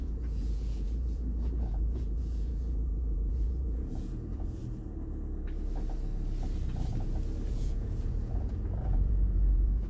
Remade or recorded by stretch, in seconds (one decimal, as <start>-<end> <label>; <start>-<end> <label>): 0.0-4.6 remade; 4.6-7.5 recorded; 7.5-9.9 remade